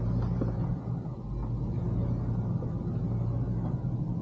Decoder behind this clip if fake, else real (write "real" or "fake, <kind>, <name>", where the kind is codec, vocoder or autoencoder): real